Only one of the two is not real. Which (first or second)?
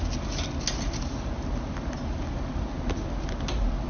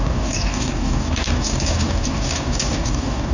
second